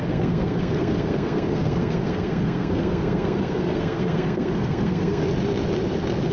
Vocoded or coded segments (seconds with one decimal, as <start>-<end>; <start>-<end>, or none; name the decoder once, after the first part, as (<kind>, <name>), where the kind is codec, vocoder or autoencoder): 0.0-5.2 (codec, SNAC)